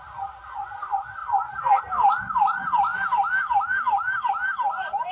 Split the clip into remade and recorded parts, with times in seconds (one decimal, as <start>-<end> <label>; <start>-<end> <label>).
0.0-5.1 recorded